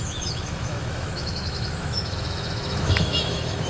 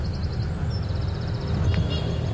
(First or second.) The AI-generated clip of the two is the first